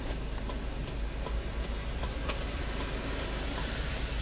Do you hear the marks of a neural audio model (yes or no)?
no